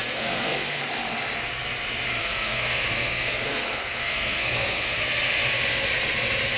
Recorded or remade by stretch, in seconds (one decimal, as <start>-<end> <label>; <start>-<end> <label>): 0.0-0.8 remade; 0.8-2.2 recorded; 2.2-5.0 remade; 5.0-6.6 recorded